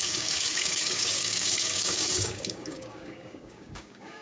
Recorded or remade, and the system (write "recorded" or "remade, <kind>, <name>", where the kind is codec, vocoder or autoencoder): remade, codec, DAC